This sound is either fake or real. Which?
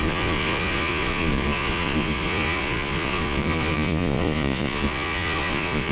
fake